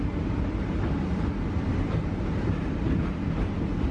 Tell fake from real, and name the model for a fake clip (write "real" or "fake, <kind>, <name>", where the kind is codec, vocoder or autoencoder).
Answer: real